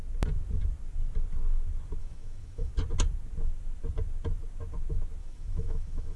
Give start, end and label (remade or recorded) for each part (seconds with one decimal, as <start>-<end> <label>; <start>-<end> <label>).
0.0-2.0 recorded; 2.0-2.7 remade; 2.7-5.2 recorded; 5.2-6.2 remade